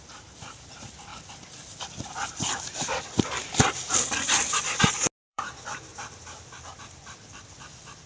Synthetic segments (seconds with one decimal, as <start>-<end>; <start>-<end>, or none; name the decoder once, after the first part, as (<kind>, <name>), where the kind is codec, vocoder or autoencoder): 0.0-1.1 (vocoder, BigVGAN v2); 5.3-5.9